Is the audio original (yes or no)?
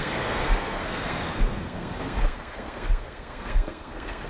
no